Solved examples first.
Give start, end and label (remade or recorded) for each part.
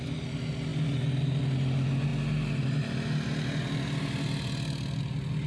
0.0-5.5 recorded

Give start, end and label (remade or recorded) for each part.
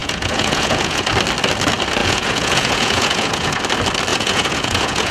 0.0-1.1 remade; 1.1-2.0 recorded; 2.0-3.6 remade; 3.6-4.1 recorded; 4.1-5.1 remade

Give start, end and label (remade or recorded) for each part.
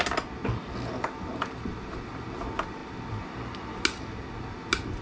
0.0-5.0 recorded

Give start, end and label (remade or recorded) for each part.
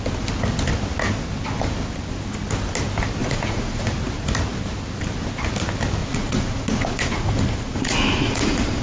0.0-3.2 recorded; 3.2-3.9 remade; 3.9-6.0 recorded; 6.0-8.8 remade